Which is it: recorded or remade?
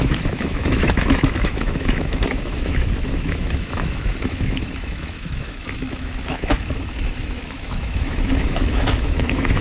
remade